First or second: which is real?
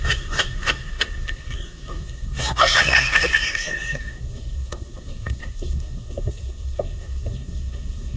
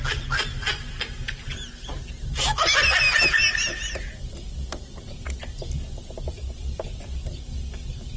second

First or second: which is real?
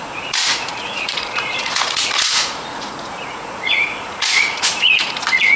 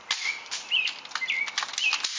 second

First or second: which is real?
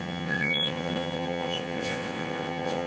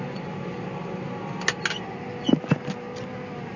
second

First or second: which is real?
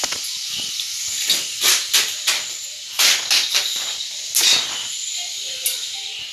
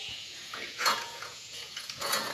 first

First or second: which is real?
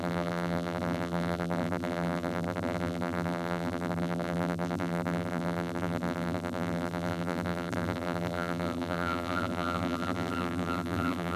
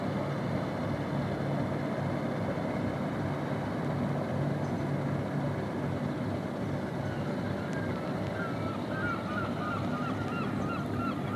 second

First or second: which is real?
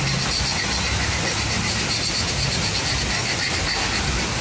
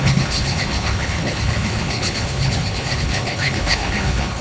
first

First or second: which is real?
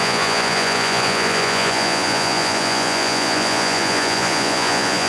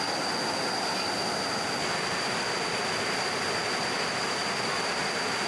second